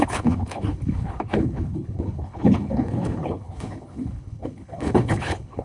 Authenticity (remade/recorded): remade